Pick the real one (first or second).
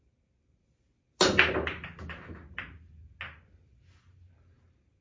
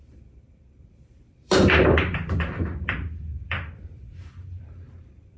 first